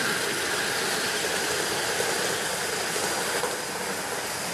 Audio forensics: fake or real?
real